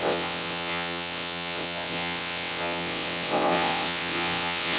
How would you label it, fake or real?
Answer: fake